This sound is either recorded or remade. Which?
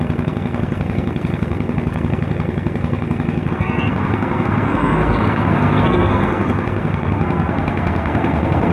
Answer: remade